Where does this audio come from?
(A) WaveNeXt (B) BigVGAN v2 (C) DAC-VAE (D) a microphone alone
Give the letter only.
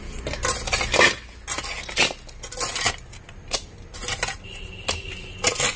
D